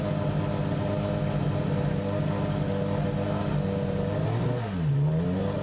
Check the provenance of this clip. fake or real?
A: real